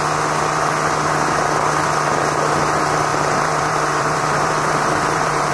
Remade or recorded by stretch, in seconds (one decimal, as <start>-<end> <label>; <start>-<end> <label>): 0.0-3.1 recorded; 3.1-5.5 remade